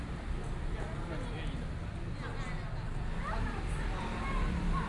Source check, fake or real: real